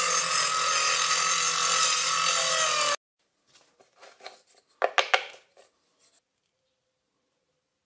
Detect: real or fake real